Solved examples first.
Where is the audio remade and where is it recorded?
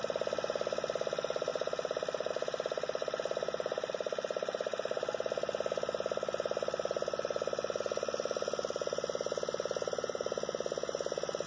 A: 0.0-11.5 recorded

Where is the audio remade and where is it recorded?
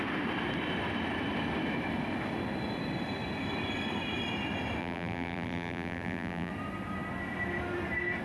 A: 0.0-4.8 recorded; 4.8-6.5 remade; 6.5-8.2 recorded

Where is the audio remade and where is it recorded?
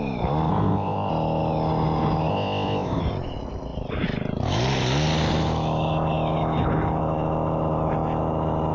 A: 0.0-0.5 recorded; 0.5-1.1 remade; 1.1-2.3 recorded; 2.3-3.0 remade; 3.0-8.7 recorded